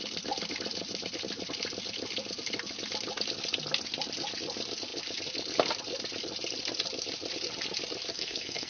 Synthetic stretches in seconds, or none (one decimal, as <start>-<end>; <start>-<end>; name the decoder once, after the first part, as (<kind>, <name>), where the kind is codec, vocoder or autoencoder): 8.1-8.7 (codec, SNAC)